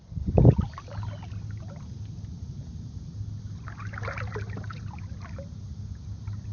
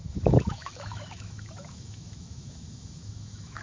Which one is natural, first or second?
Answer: first